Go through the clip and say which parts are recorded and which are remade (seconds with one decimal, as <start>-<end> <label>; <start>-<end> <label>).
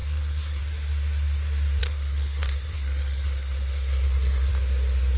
0.0-0.6 remade; 0.6-1.8 recorded; 1.8-4.5 remade; 4.5-5.2 recorded